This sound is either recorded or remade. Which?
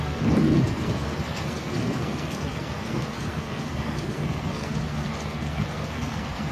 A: remade